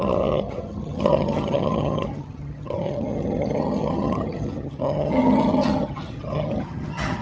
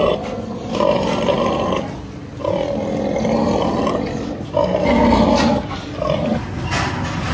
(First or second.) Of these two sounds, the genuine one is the second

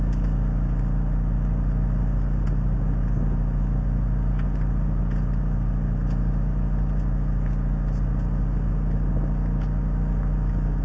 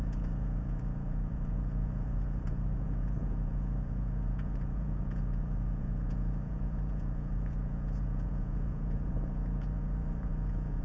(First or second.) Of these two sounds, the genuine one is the first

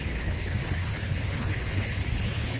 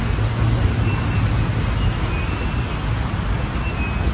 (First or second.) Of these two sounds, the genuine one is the second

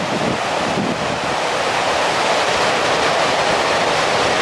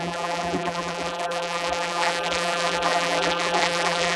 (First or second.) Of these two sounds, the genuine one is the first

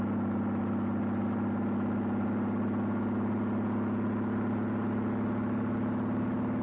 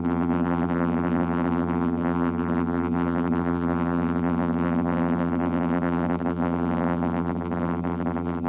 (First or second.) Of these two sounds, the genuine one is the first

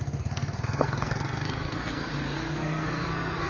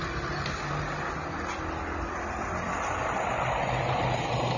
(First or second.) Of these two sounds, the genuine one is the second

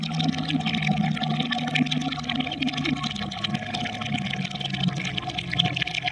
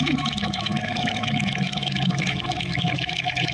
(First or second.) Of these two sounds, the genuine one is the first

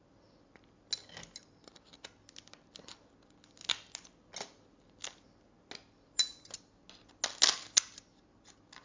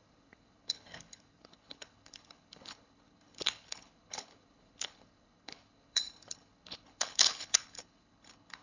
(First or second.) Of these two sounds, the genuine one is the first